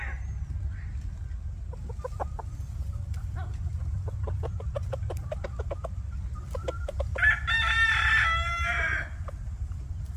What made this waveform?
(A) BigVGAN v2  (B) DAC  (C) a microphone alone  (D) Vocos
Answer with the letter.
C